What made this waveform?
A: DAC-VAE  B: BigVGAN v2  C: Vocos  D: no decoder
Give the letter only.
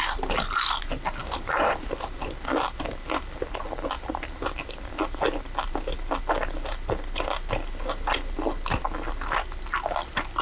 D